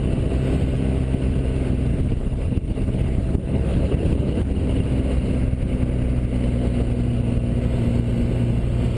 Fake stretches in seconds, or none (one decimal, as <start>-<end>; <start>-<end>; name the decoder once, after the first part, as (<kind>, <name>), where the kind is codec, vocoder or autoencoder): 1.9-4.5 (codec, HILCodec)